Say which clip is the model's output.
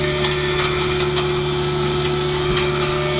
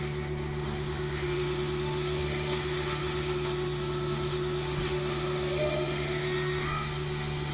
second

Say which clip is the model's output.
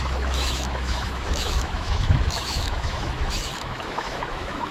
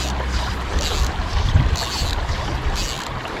first